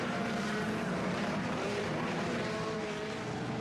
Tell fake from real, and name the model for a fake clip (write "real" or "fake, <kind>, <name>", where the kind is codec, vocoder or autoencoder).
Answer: fake, vocoder, BigVGAN v2